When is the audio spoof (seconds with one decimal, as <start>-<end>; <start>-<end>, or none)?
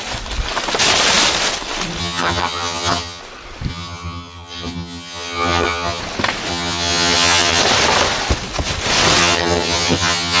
2.0-3.2; 3.7-6.0; 6.5-7.6; 9.2-10.4